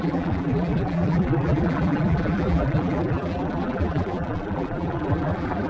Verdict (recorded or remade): remade